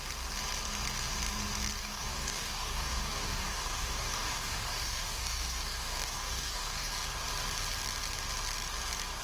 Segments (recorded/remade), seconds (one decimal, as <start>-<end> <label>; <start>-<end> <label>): 0.0-1.8 recorded; 1.8-6.9 remade; 6.9-9.2 recorded